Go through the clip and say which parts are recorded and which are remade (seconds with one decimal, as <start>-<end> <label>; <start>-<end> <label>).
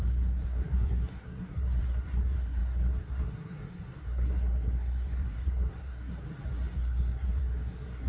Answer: 0.0-6.1 remade; 6.1-6.7 recorded; 6.7-8.1 remade